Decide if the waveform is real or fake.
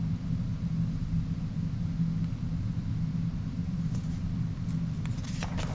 real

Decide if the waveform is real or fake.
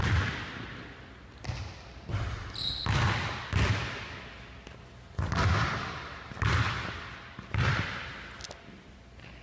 real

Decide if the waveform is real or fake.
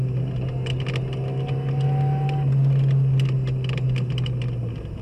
real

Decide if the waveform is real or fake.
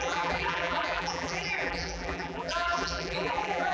fake